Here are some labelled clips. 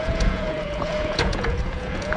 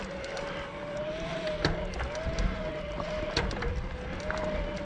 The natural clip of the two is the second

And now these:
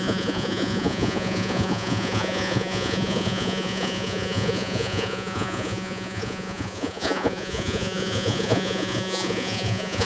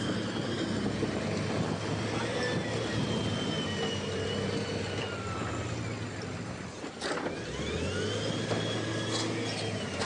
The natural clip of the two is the second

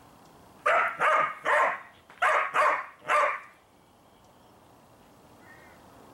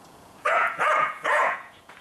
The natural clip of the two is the first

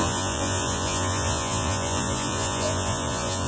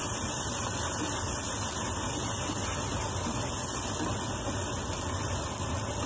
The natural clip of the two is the second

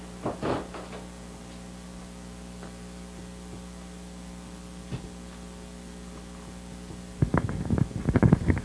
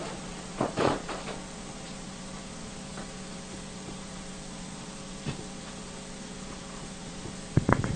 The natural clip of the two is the first